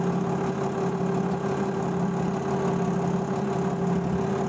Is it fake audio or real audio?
real